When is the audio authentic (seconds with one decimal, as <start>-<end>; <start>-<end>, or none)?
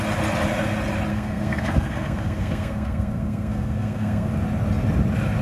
0.0-1.1; 4.3-5.4